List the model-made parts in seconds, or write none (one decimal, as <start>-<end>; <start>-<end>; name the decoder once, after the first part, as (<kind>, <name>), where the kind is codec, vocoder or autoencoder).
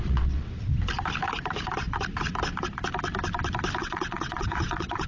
0.0-0.7 (vocoder, WaveNeXt); 3.8-5.1